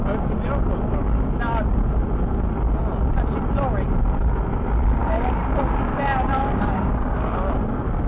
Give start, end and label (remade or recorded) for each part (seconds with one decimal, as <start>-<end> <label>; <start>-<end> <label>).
0.0-5.0 recorded; 5.0-5.9 remade; 5.9-6.4 recorded; 6.4-7.5 remade; 7.5-8.1 recorded